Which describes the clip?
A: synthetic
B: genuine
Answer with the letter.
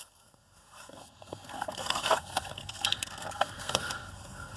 A